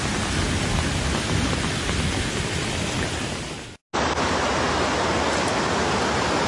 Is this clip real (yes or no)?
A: yes